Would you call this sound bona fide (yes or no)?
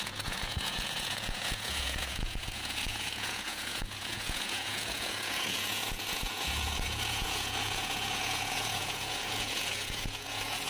no